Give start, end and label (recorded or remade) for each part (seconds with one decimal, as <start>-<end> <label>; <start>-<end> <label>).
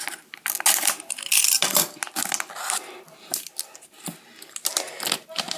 0.0-5.6 recorded